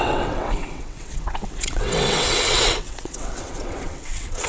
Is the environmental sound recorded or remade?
remade